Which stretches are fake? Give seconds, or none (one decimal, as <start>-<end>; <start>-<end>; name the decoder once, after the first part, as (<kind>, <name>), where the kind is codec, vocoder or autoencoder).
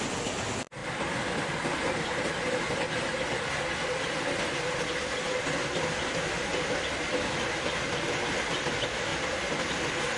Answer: none